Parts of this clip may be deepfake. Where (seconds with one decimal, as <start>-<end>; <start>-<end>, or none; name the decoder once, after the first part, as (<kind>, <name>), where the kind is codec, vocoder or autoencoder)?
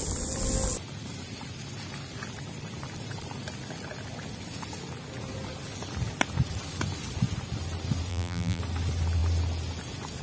8.1-8.6 (vocoder, BigVGAN v2)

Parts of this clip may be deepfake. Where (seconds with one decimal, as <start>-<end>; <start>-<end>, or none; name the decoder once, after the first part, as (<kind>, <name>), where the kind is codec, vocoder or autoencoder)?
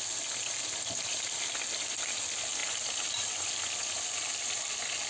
none